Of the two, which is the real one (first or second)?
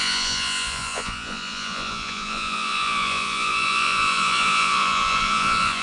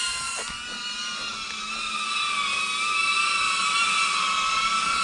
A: second